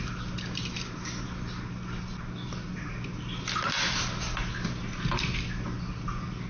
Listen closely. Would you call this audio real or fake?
real